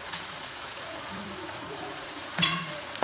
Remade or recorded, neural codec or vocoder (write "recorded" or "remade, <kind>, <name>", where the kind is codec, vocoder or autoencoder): remade, vocoder, Vocos